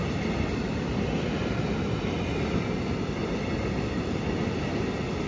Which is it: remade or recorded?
recorded